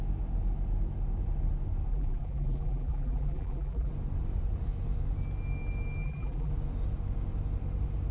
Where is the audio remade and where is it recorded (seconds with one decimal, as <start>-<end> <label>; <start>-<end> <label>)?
0.0-1.9 recorded; 1.9-3.9 remade; 3.9-6.0 recorded; 6.0-6.5 remade; 6.5-8.1 recorded